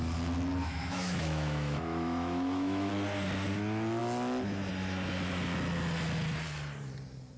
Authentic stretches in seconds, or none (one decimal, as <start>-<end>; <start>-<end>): 0.0-0.6; 2.9-7.4